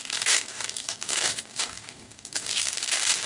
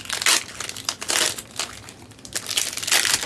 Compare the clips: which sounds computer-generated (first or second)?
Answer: first